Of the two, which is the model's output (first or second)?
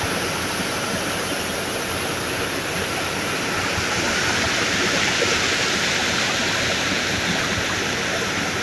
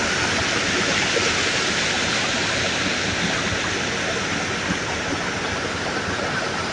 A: first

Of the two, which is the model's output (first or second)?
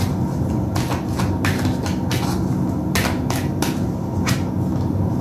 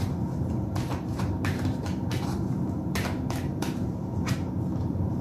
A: second